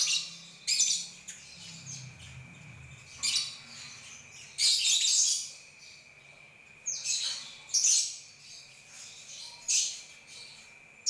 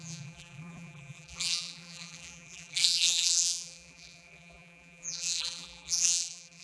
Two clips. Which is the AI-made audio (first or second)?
second